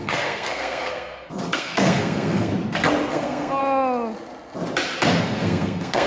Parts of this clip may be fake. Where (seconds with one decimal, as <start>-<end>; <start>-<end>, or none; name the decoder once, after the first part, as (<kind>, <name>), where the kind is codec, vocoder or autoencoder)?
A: 0.0-2.5 (codec, SNAC); 3.1-3.6; 5.2-6.1

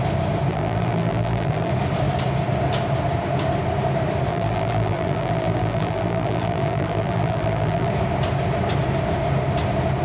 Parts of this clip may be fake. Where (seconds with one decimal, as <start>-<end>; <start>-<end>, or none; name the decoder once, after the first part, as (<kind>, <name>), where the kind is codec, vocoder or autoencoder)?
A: 0.5-1.7 (vocoder, BigVGAN v2); 4.3-7.9

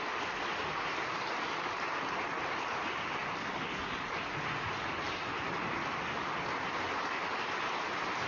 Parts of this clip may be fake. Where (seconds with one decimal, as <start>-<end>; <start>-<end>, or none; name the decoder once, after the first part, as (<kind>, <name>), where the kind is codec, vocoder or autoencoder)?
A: none

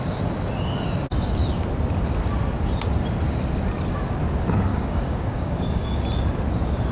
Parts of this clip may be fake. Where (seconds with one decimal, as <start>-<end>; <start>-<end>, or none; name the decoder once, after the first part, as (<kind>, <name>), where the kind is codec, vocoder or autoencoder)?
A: 4.7-6.0 (codec, DAC)